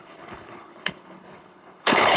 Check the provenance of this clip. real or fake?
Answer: fake